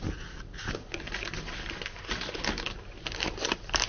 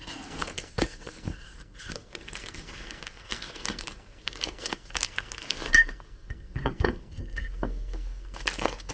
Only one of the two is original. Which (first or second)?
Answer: first